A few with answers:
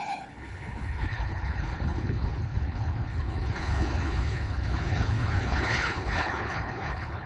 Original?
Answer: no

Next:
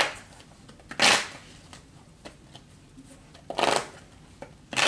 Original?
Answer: yes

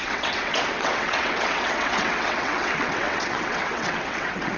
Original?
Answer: no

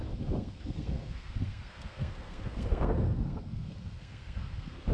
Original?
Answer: no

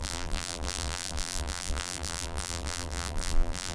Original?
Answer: no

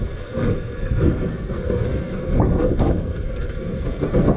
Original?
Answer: no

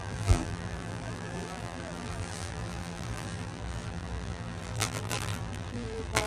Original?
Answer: no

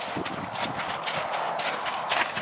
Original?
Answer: yes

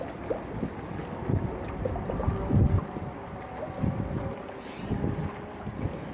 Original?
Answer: yes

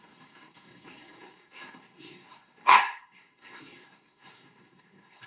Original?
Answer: no